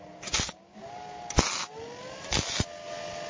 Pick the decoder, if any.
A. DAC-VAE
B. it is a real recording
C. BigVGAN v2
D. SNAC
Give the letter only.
B